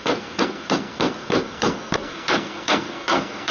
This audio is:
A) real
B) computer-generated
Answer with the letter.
B